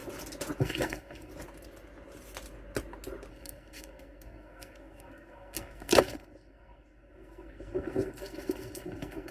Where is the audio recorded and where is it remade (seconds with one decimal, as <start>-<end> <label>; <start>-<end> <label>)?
0.0-0.6 recorded; 0.6-1.3 remade; 1.3-3.3 recorded; 3.3-9.3 remade